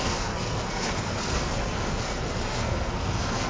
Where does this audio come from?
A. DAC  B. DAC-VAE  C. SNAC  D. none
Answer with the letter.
C